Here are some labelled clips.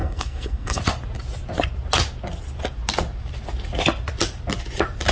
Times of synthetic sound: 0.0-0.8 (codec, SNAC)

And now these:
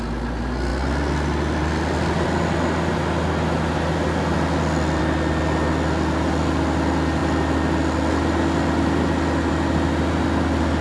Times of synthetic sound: none

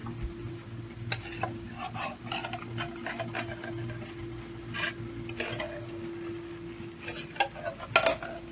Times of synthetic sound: none

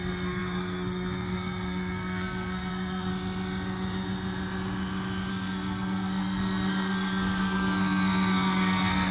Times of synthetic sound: 0.0-3.1 (codec, SNAC); 5.3-9.1

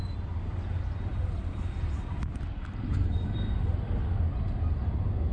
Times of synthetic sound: none

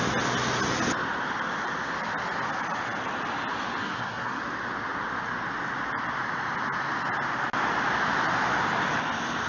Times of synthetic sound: 3.8-4.4 (codec, SNAC)

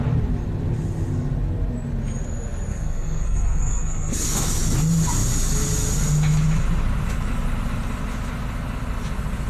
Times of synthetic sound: 2.7-4.6 (codec, SNAC)